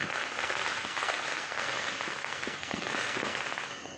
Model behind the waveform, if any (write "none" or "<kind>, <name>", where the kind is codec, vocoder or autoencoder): codec, SNAC